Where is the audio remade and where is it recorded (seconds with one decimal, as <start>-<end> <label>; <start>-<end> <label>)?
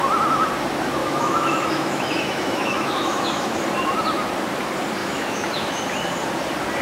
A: 0.0-1.0 recorded; 1.0-3.6 remade; 3.6-5.0 recorded; 5.0-5.8 remade; 5.8-6.8 recorded